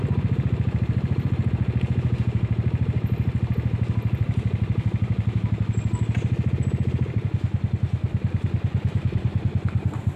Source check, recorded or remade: recorded